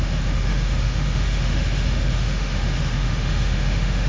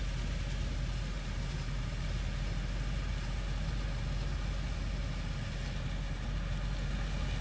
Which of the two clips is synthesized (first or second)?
first